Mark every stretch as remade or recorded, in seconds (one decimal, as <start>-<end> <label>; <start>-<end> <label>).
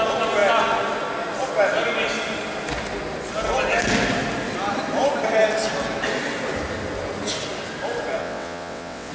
0.0-8.2 recorded; 8.2-9.1 remade